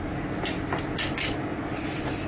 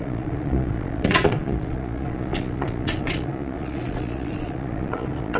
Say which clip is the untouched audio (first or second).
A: first